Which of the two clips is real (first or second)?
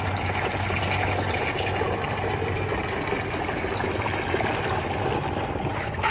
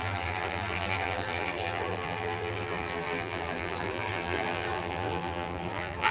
first